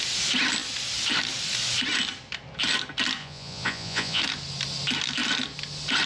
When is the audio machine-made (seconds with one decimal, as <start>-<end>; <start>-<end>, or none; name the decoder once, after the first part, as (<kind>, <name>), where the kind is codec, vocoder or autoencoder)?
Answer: 3.2-4.2 (vocoder, Vocos)